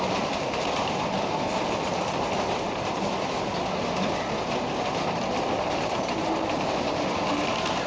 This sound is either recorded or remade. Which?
remade